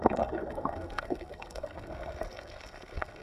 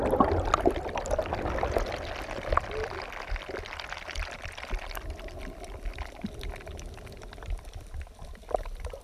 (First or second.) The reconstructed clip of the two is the first